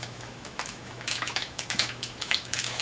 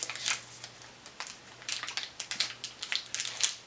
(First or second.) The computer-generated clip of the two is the first